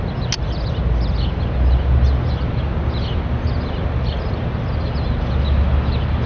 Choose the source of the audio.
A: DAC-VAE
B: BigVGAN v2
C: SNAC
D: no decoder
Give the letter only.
D